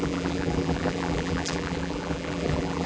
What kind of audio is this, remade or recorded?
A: remade